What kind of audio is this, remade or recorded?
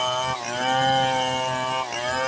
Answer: recorded